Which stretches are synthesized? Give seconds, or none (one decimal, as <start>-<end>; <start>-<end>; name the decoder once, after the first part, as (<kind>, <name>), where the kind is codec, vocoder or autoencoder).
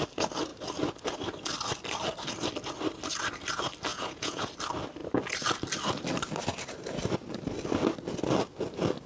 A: 3.9-4.4 (vocoder, Vocos)